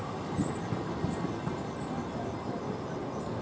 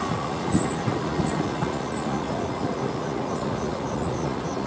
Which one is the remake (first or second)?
second